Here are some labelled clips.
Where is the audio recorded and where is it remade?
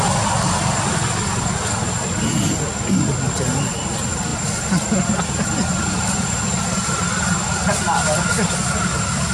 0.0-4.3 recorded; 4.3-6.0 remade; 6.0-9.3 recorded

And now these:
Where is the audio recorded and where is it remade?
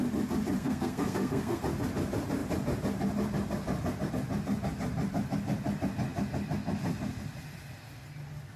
0.0-0.6 recorded; 0.6-1.6 remade; 1.6-8.6 recorded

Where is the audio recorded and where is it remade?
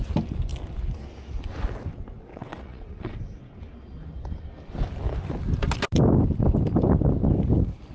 0.0-2.3 recorded; 2.3-3.2 remade; 3.2-7.9 recorded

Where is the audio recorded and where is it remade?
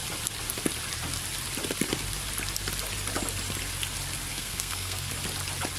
0.0-4.3 recorded; 4.3-5.1 remade; 5.1-5.8 recorded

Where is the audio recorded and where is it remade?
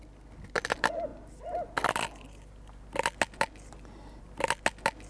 0.0-5.1 recorded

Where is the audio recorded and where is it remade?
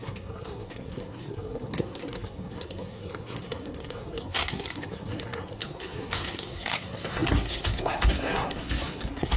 0.0-9.4 remade